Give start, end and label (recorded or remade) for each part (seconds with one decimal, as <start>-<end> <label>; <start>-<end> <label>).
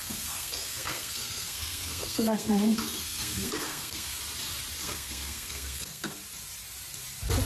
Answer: 0.0-4.2 remade; 4.2-4.8 recorded; 4.8-6.2 remade; 6.2-7.5 recorded